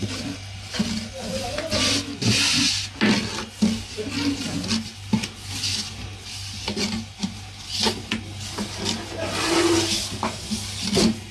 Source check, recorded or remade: recorded